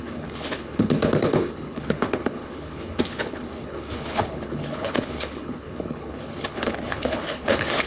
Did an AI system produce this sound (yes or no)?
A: yes